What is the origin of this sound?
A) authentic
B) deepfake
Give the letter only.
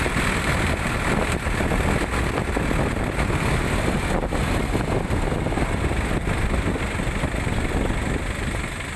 A